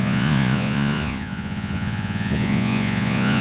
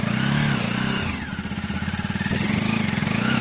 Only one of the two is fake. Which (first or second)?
first